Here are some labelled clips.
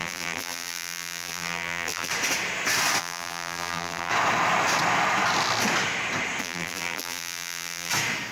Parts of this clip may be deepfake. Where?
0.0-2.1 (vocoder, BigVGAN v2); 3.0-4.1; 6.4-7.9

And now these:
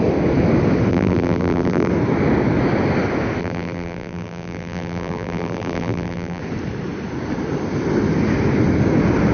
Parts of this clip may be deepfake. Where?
0.9-1.9 (vocoder, BigVGAN v2); 3.4-6.4

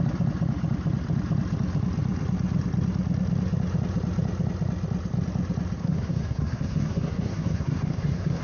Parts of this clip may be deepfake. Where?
5.8-8.4 (codec, SNAC)

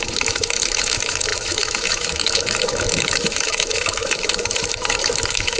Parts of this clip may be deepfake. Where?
0.0-5.6 (autoencoder, DAC-VAE)

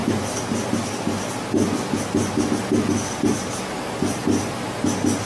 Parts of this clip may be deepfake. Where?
none

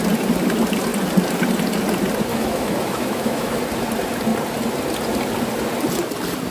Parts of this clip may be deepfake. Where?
2.3-3.6 (autoencoder, DAC-VAE)